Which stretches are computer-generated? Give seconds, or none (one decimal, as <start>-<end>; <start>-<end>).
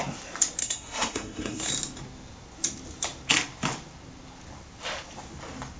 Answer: 0.6-1.7